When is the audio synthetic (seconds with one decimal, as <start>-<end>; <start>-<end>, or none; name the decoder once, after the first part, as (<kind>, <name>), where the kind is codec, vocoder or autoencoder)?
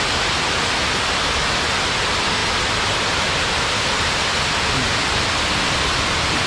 none